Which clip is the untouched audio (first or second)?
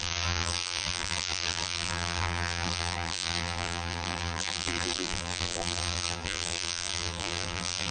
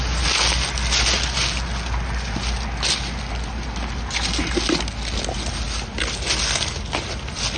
second